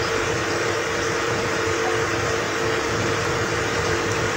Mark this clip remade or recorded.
recorded